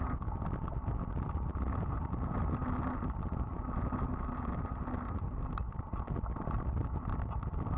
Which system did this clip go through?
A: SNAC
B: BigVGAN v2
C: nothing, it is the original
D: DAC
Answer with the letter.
C